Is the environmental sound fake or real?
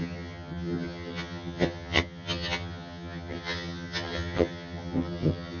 fake